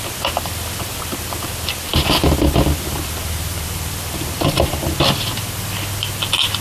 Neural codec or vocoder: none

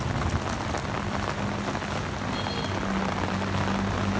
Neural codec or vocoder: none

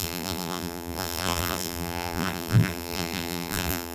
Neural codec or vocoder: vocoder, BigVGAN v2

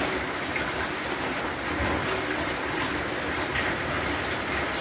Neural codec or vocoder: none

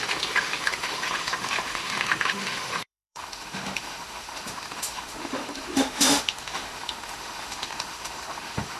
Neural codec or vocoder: autoencoder, DAC-VAE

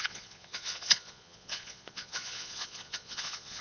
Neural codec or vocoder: vocoder, Vocos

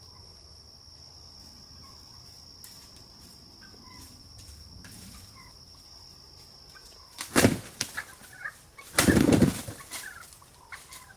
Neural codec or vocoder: none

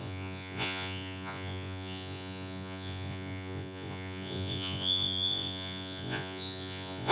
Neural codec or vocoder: vocoder, Vocos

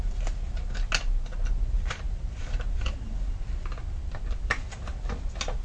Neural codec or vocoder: none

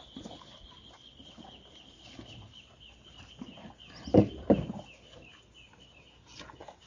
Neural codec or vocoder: none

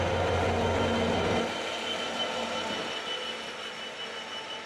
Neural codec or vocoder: none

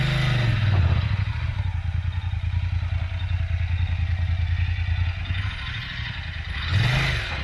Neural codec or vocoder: none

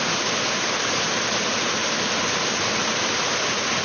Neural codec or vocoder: none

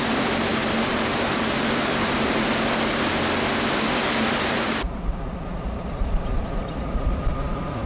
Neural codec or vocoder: none